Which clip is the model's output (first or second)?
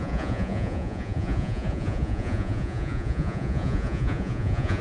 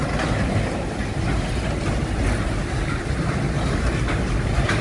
first